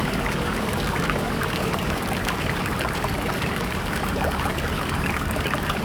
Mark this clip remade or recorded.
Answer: remade